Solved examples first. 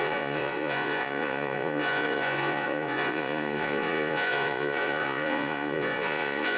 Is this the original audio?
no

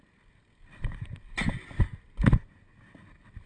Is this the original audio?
yes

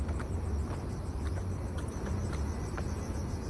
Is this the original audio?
yes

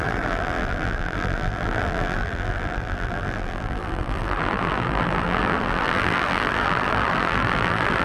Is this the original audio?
no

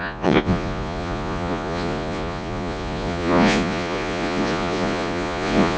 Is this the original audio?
no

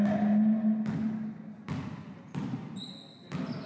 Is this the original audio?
yes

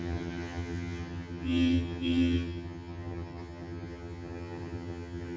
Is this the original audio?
no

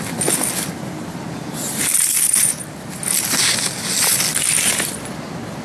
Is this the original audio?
yes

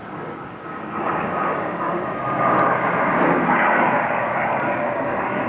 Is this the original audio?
no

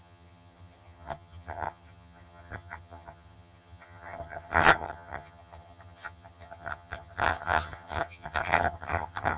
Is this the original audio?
no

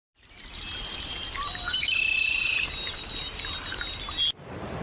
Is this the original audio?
yes